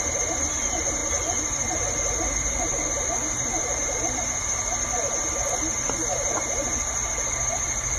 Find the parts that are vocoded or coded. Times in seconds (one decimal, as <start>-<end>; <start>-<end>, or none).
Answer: none

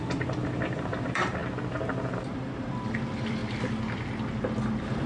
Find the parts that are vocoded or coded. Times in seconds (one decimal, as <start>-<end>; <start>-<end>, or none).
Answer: 0.0-1.4; 2.1-3.4; 4.3-5.1